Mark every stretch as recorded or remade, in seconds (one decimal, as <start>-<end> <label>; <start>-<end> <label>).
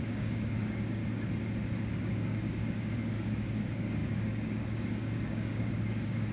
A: 0.0-1.0 remade; 1.0-1.8 recorded; 1.8-6.3 remade